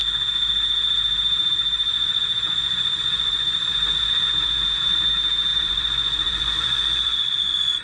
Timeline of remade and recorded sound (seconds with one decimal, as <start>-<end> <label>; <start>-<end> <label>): 0.0-1.9 recorded; 1.9-5.1 remade; 5.1-5.5 recorded; 5.5-7.8 remade